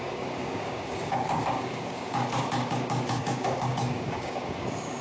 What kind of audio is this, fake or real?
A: fake